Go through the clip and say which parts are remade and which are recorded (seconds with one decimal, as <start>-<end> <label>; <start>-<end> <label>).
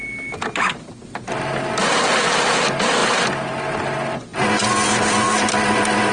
0.0-6.1 recorded